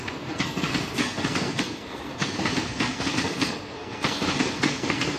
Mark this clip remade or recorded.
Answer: remade